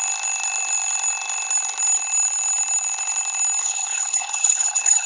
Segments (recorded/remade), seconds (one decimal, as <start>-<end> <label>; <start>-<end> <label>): 0.0-3.6 recorded; 3.6-5.1 remade